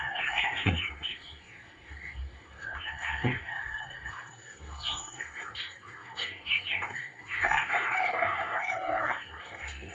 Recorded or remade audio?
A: remade